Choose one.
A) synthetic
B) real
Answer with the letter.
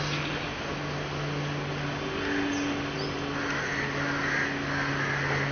B